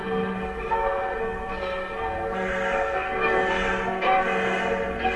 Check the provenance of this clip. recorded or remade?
remade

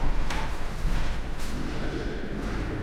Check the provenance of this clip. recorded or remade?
remade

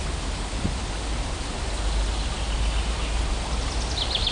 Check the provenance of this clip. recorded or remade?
recorded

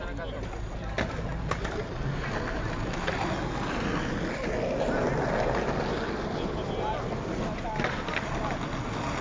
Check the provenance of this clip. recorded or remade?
recorded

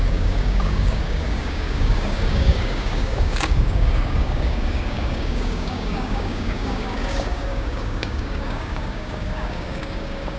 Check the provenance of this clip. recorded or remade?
remade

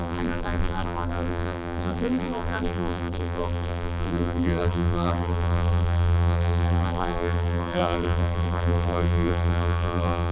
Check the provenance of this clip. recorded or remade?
remade